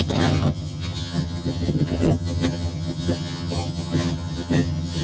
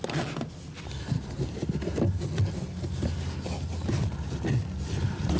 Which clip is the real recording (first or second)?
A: second